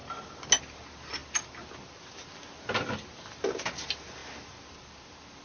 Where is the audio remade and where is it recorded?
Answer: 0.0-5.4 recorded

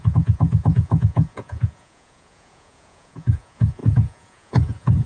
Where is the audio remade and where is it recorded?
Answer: 0.0-5.1 remade

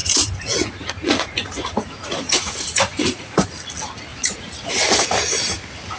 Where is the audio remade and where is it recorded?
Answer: 0.0-3.6 remade; 3.6-4.1 recorded; 4.1-4.7 remade; 4.7-6.0 recorded